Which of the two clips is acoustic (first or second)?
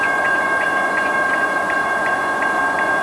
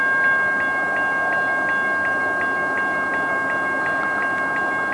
second